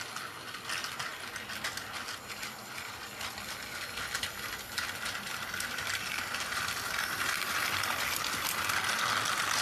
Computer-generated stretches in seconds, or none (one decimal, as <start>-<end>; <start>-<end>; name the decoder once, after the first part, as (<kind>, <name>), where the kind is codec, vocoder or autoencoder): none